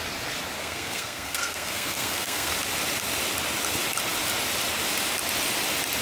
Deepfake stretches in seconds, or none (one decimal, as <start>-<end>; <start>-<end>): 0.6-2.5